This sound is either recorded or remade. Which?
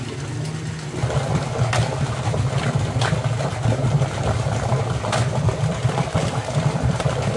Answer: recorded